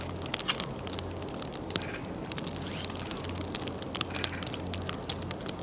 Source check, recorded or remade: recorded